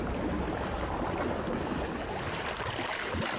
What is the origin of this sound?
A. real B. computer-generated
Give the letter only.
A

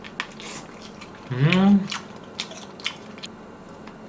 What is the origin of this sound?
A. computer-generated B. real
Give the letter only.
B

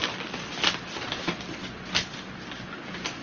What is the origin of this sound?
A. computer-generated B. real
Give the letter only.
B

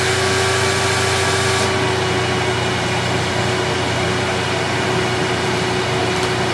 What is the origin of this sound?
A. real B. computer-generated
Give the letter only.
A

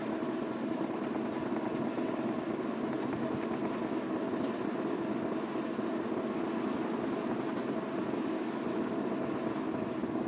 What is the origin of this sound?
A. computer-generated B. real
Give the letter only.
B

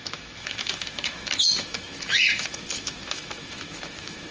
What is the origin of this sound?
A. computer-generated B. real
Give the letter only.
A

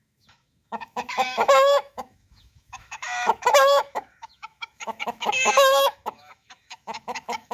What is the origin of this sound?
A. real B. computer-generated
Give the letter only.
B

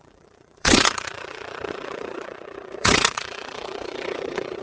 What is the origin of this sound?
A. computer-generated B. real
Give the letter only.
A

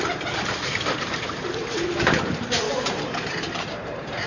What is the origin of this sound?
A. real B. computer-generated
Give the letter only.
B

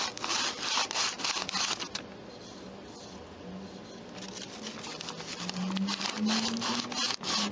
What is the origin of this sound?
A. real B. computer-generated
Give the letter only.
A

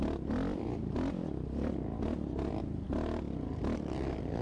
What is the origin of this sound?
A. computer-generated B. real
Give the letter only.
B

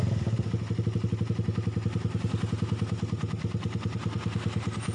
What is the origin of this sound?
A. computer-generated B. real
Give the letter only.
B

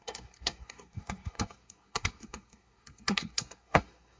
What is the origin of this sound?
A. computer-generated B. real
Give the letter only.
A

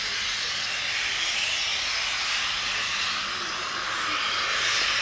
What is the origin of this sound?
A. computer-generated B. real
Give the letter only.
B